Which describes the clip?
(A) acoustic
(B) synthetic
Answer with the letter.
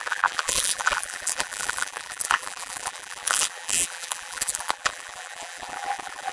B